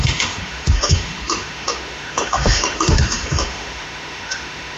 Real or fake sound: fake